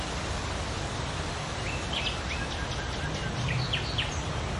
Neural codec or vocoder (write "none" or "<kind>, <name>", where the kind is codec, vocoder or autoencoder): none